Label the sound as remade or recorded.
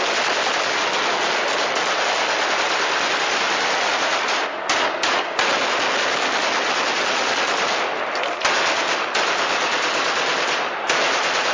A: recorded